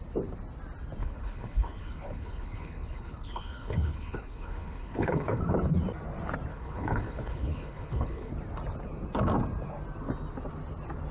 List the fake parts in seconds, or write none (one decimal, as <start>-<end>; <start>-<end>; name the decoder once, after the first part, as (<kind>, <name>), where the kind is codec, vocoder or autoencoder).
1.0-5.4 (codec, HILCodec); 6.5-8.3

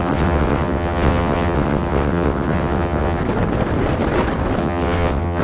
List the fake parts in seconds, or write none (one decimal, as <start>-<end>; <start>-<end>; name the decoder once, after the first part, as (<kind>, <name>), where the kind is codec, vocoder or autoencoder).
0.0-3.2 (vocoder, WaveNeXt); 4.6-5.4

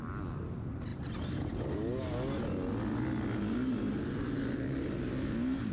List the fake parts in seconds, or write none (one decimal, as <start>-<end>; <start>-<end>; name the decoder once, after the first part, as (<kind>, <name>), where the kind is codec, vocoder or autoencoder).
none

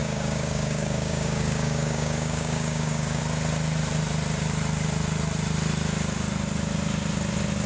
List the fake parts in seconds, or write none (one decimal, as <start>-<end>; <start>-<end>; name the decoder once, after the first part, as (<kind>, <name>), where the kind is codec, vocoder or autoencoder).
0.0-3.2 (codec, DAC)